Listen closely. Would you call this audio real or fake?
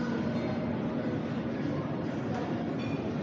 real